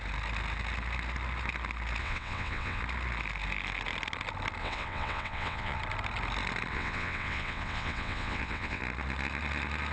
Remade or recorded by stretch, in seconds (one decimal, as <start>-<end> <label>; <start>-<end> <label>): 0.0-2.0 recorded; 2.0-2.8 remade; 2.8-4.6 recorded; 4.6-5.8 remade; 5.8-6.7 recorded; 6.7-8.8 remade; 8.8-9.9 recorded